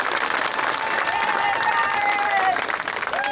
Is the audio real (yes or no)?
yes